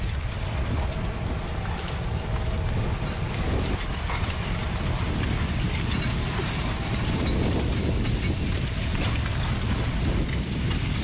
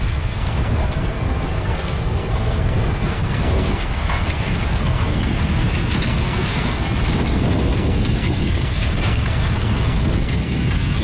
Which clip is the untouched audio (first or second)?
first